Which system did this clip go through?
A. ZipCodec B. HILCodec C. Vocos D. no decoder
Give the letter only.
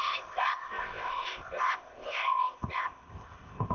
A